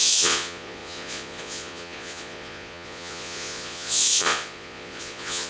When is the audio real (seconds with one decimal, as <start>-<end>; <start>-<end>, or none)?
none